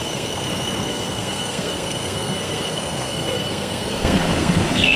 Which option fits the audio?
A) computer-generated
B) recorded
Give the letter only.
A